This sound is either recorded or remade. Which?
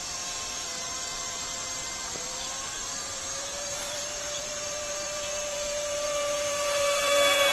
remade